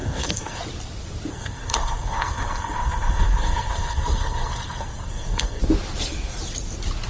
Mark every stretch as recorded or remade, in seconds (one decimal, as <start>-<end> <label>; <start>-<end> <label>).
0.0-0.6 remade; 0.6-1.3 recorded; 1.3-5.6 remade; 5.6-7.1 recorded